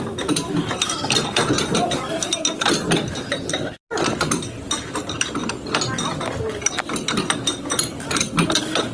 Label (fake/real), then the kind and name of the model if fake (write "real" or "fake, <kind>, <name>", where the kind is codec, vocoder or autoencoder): real